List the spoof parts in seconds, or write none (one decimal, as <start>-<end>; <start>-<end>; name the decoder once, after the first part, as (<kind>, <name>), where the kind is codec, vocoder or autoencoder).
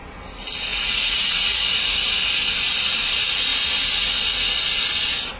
0.7-1.7 (vocoder, Vocos)